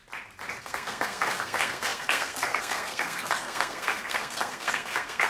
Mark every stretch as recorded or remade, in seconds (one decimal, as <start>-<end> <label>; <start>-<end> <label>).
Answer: 0.0-0.6 recorded; 0.6-5.3 remade